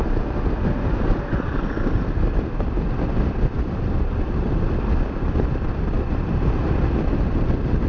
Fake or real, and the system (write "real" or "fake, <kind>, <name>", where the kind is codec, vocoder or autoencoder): real